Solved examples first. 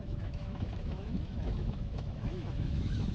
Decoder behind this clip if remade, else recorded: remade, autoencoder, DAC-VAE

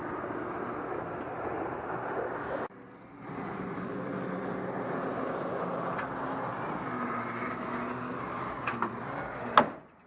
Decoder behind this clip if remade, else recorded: recorded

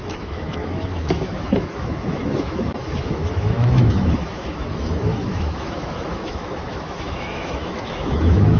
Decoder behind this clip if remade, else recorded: remade, autoencoder, DAC-VAE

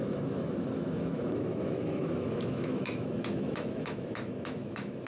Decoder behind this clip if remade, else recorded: remade, autoencoder, DAC-VAE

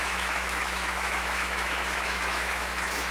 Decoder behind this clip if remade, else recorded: remade, autoencoder, DAC-VAE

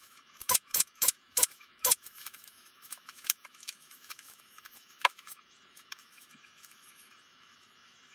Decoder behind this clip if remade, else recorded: remade, autoencoder, DAC-VAE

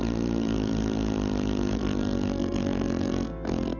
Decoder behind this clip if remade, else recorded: recorded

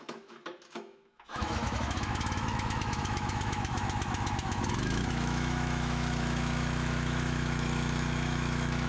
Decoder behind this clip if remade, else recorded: remade, autoencoder, DAC-VAE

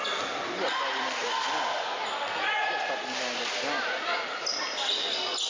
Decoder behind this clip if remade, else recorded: recorded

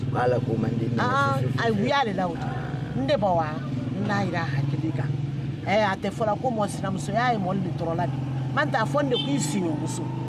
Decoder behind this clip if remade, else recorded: recorded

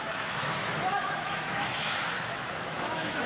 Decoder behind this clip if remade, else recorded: remade, autoencoder, DAC-VAE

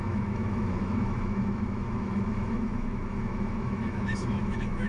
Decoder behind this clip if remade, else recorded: remade, autoencoder, DAC-VAE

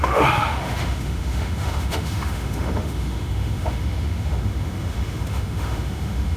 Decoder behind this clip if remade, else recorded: remade, autoencoder, DAC-VAE